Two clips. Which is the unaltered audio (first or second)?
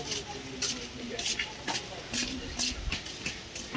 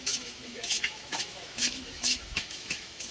first